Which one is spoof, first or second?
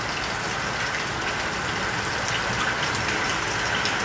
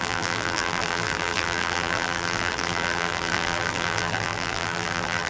second